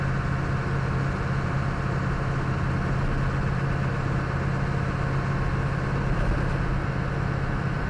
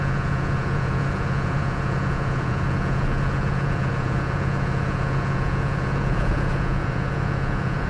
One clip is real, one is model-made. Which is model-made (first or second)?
second